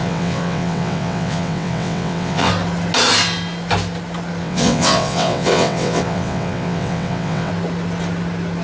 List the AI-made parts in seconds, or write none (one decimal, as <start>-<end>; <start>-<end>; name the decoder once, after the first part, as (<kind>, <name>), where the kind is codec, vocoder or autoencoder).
0.0-2.5 (vocoder, WaveNeXt); 4.4-7.5